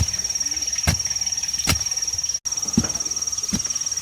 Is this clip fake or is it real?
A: real